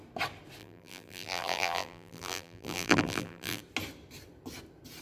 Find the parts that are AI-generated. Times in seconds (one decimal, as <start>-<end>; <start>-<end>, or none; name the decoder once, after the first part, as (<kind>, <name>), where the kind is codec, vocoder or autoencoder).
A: 0.6-3.6 (vocoder, BigVGAN v2)